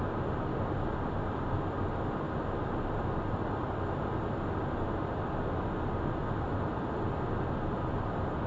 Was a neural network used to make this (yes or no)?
no